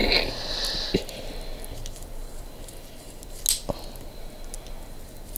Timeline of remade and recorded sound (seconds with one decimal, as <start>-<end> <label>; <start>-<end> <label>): 0.0-5.4 recorded